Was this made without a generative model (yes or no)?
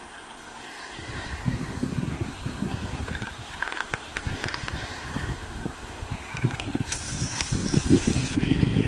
no